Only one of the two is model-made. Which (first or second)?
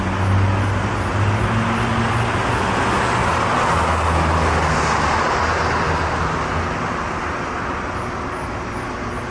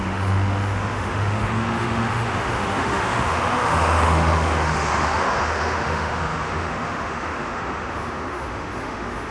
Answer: second